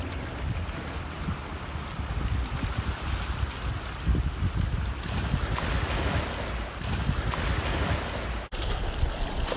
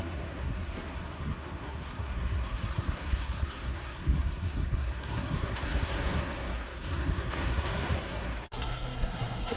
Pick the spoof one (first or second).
second